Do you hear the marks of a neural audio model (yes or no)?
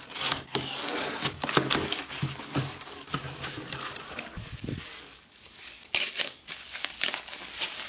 yes